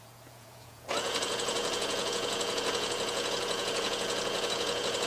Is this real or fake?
fake